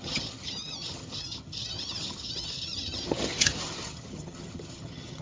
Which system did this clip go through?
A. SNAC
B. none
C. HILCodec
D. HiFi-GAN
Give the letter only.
D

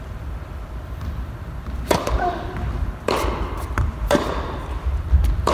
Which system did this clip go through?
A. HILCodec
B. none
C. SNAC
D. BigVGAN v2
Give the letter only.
D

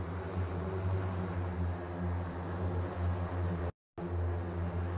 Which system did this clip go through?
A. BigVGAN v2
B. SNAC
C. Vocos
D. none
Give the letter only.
D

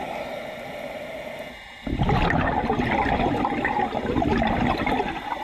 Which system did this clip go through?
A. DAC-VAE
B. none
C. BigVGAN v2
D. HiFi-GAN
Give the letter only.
B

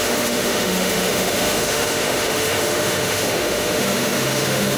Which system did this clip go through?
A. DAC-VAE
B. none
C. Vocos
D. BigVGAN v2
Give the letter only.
A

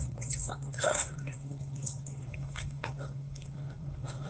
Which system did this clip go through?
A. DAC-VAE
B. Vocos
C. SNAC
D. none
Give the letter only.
C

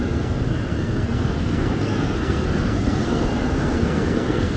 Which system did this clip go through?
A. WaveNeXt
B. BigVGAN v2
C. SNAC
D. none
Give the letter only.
C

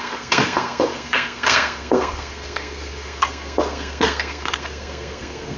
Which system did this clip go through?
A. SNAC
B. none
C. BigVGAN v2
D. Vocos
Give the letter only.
A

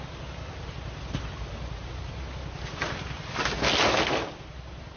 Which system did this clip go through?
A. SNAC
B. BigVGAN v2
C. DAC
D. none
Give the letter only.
D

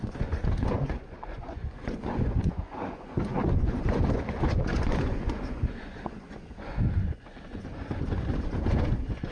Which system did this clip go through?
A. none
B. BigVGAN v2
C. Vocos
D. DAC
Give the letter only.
C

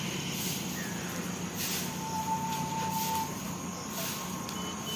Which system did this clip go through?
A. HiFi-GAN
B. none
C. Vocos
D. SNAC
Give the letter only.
B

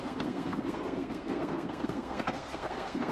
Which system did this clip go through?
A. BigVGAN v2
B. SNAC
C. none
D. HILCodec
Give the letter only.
B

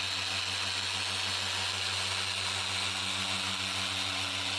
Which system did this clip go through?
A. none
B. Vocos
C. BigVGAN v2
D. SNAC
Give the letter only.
A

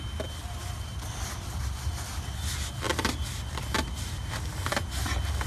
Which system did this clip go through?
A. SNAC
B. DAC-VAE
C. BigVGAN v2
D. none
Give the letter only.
D